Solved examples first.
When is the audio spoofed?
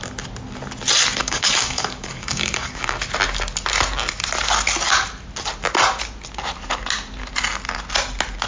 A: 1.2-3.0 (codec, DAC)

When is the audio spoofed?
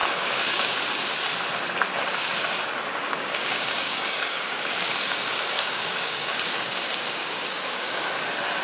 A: 0.0-0.8 (codec, DAC); 2.9-8.1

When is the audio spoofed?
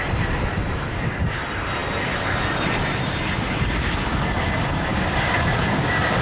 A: 0.9-1.4 (codec, DAC); 4.9-6.2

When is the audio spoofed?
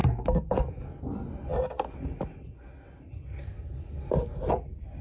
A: 0.0-1.0 (codec, DAC)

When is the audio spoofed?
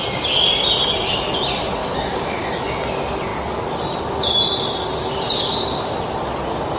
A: 1.8-2.5 (codec, DAC)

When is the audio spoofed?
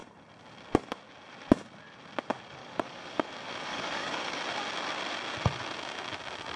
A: 2.6-3.3 (codec, DAC); 3.7-4.4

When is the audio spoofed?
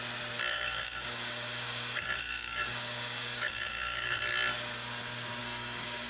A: 0.5-4.2 (codec, DAC); 5.4-6.1